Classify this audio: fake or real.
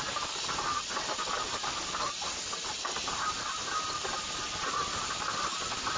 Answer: real